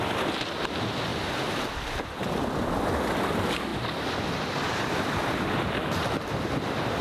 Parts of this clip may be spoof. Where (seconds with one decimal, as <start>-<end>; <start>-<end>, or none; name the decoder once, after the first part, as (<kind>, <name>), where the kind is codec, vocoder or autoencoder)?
1.1-2.4 (vocoder, BigVGAN v2); 3.7-7.0